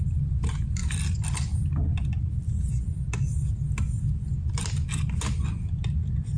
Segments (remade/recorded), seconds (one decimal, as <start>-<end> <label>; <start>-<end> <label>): 0.0-6.4 recorded